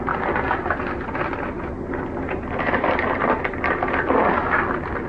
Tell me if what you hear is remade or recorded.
recorded